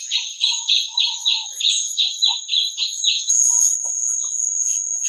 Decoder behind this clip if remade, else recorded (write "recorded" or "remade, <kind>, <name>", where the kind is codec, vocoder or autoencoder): remade, vocoder, Vocos